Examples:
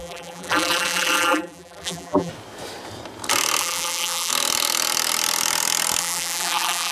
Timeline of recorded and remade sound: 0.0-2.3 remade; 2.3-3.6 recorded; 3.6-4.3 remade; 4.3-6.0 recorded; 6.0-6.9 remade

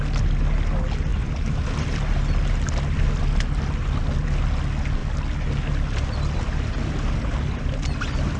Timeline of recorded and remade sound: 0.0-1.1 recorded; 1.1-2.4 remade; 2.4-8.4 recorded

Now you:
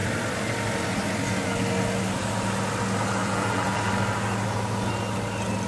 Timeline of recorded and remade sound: 0.0-3.2 recorded; 3.2-3.9 remade; 3.9-5.7 recorded

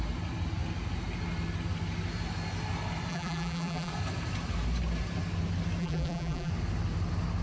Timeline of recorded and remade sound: 0.0-3.1 recorded; 3.1-3.9 remade; 3.9-5.8 recorded; 5.8-6.5 remade; 6.5-7.4 recorded